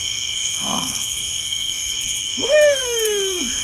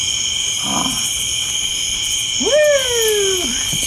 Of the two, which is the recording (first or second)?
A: second